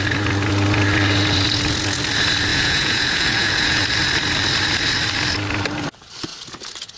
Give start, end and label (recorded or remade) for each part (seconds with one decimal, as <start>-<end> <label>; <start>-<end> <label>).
0.0-2.5 recorded; 2.5-3.8 remade; 3.8-7.0 recorded